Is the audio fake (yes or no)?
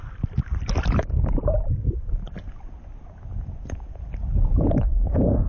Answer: no